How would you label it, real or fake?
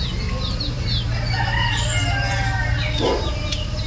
real